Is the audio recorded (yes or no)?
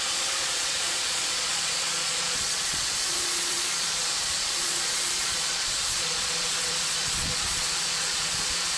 no